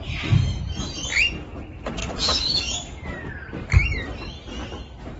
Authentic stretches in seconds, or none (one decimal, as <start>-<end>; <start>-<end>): 0.0-2.0; 3.3-5.2